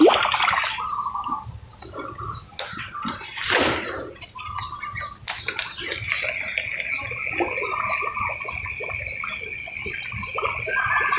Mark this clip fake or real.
real